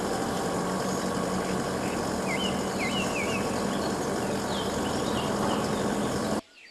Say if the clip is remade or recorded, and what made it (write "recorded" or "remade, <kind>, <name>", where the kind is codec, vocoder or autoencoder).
recorded